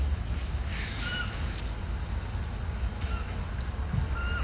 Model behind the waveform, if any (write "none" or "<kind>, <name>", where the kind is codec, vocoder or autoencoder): none